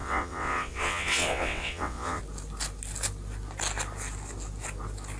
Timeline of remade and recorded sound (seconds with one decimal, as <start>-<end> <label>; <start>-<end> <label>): 0.0-2.2 remade; 2.2-5.2 recorded